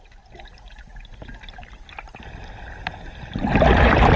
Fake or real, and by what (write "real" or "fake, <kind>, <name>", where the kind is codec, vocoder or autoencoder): real